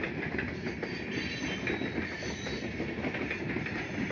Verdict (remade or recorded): recorded